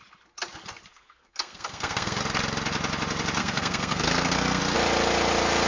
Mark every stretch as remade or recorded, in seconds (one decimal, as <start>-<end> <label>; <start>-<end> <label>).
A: 0.0-0.9 recorded; 0.9-2.2 remade; 2.2-3.4 recorded; 3.4-4.6 remade; 4.6-5.7 recorded